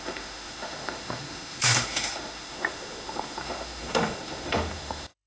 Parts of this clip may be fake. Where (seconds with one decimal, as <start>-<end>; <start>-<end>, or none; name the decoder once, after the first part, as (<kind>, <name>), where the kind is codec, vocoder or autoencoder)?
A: 0.0-5.3 (autoencoder, DAC-VAE)